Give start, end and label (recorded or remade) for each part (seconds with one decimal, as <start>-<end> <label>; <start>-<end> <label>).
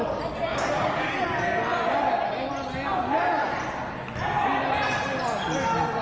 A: 0.0-0.5 recorded; 0.5-1.1 remade; 1.1-6.0 recorded